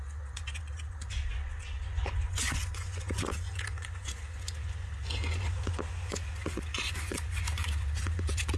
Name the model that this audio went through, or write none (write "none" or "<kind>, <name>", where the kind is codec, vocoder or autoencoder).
vocoder, Vocos